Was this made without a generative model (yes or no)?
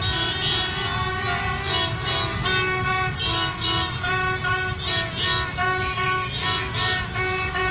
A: yes